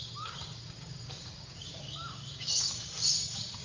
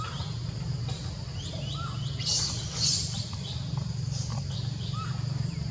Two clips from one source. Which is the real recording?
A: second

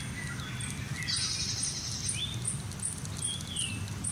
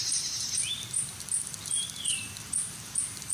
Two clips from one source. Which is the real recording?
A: first